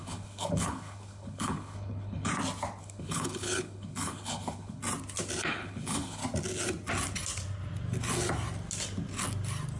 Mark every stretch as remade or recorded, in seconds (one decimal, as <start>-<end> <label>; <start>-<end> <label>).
0.0-2.3 remade; 2.3-2.8 recorded; 2.8-4.8 remade; 4.8-5.5 recorded; 5.5-6.2 remade; 6.2-9.8 recorded